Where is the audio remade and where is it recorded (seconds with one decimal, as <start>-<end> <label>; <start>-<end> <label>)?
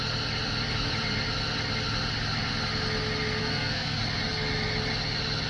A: 0.0-3.4 recorded; 3.4-4.0 remade; 4.0-5.5 recorded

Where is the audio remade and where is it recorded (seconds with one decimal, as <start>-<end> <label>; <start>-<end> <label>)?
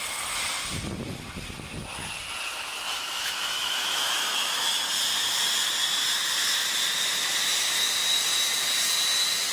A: 0.0-2.5 recorded; 2.5-4.9 remade; 4.9-9.5 recorded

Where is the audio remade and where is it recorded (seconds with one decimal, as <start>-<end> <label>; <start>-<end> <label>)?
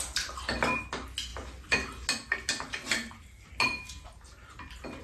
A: 0.0-5.0 recorded